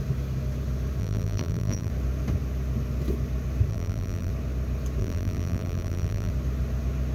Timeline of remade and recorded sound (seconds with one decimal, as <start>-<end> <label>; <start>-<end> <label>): 0.0-1.0 recorded; 1.0-1.9 remade; 1.9-3.7 recorded; 3.7-4.3 remade; 4.3-5.0 recorded; 5.0-6.3 remade; 6.3-7.1 recorded